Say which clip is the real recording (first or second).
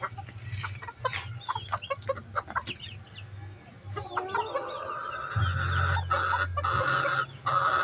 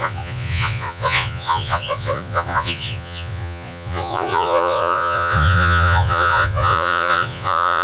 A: first